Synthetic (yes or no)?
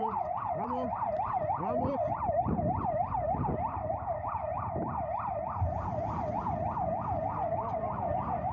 yes